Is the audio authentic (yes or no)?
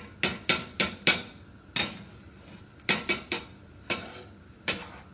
yes